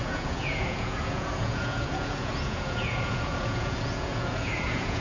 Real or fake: fake